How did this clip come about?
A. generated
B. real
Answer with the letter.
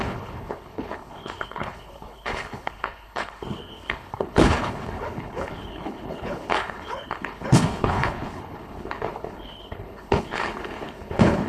A